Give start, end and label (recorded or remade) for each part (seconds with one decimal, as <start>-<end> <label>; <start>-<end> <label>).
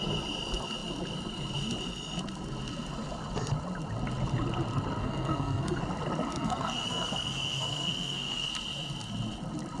0.0-5.0 recorded; 5.0-5.8 remade; 5.8-6.3 recorded; 6.3-8.5 remade; 8.5-9.8 recorded